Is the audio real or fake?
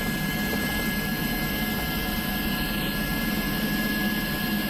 real